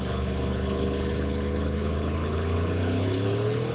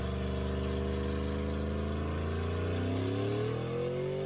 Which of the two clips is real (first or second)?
second